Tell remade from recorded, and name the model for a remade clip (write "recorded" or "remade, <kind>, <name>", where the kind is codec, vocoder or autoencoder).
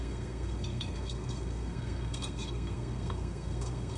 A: remade, codec, SNAC